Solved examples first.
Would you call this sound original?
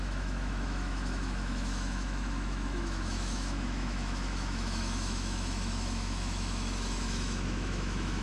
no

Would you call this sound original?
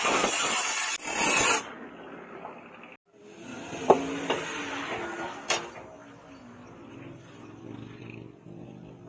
yes